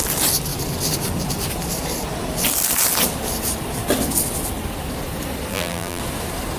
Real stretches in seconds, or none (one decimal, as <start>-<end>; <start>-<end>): 0.0-5.5; 6.0-6.6